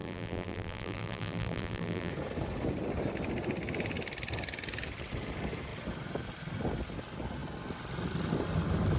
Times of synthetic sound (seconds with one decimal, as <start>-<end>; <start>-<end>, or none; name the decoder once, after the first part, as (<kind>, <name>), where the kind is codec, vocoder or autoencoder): 0.0-2.1 (vocoder, BigVGAN v2)